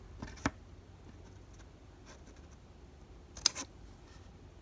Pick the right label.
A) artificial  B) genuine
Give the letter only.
B